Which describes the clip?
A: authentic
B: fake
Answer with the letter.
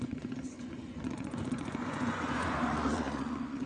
B